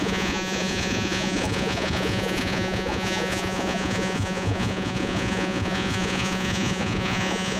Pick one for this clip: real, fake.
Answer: fake